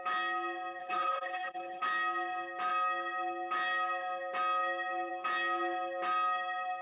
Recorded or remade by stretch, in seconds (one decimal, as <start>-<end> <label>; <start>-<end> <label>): 0.0-0.8 recorded; 0.8-1.8 remade; 1.8-6.8 recorded